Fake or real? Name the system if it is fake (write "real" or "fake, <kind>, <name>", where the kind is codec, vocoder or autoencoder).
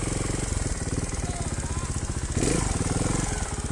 real